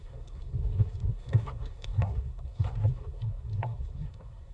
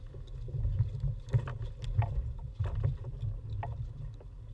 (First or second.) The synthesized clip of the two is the first